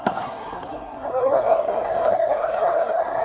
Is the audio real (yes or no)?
no